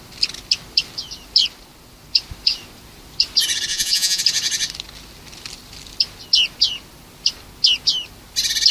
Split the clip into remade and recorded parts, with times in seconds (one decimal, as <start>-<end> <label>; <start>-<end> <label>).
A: 0.0-3.7 recorded; 3.7-4.2 remade; 4.2-8.7 recorded